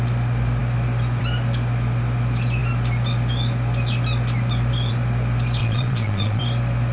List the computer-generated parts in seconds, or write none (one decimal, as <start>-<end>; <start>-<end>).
5.6-6.4